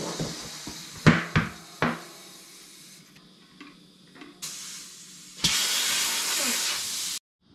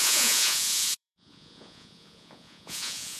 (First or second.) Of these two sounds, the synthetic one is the second